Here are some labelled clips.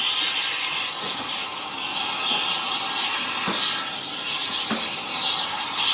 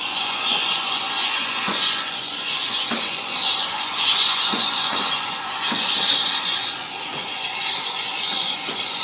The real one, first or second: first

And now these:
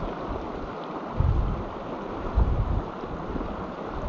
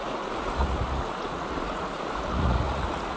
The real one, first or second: first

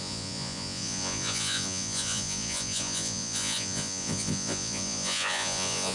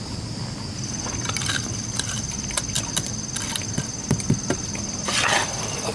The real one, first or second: second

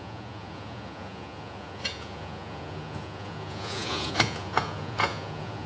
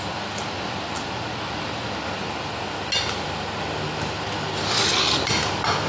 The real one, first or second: second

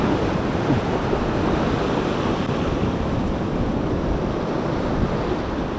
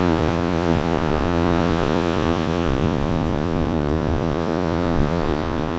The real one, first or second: first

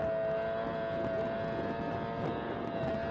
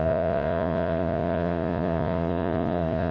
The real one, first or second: first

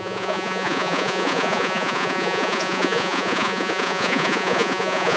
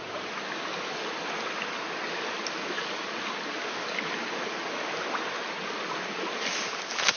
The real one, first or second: second